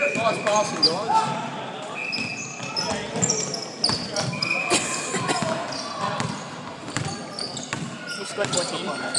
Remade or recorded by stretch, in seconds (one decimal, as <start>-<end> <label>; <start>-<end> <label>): 0.0-9.2 recorded